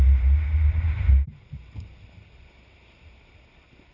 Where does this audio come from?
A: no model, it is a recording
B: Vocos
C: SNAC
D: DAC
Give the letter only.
A